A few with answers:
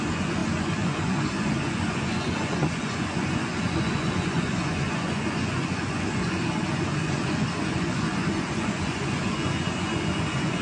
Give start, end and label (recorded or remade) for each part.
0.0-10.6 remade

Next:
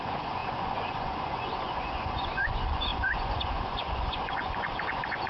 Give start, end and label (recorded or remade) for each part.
0.0-5.3 remade

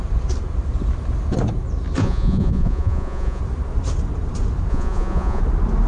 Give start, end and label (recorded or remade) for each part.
0.0-2.0 recorded; 2.0-3.4 remade; 3.4-4.7 recorded; 4.7-5.4 remade; 5.4-5.9 recorded

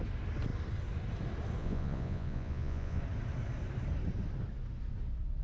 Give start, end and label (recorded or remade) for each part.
0.0-1.6 recorded; 1.6-3.0 remade; 3.0-5.4 recorded

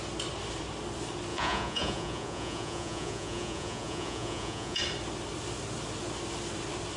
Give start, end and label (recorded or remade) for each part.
0.0-1.3 recorded; 1.3-4.8 remade; 4.8-7.0 recorded

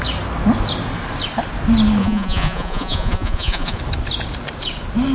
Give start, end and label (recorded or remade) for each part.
0.0-2.0 recorded; 2.0-3.8 remade; 3.8-5.1 recorded

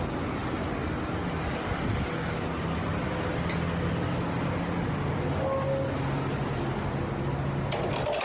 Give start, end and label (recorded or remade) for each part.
0.0-8.2 recorded